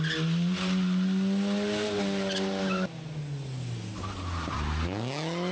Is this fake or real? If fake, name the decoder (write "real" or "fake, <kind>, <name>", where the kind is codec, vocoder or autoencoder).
real